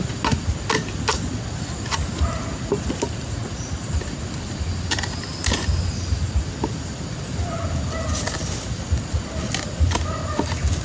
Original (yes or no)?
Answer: yes